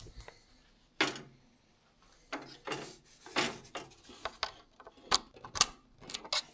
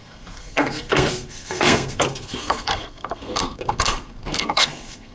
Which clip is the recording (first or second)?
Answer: first